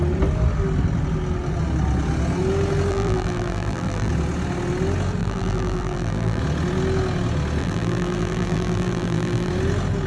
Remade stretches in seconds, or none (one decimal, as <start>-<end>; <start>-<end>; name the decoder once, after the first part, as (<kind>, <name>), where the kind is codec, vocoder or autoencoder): 2.9-4.1 (vocoder, BigVGAN v2); 5.2-6.4; 7.6-9.5